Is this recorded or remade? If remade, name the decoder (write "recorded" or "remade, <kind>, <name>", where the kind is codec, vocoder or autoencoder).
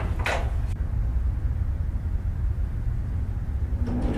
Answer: recorded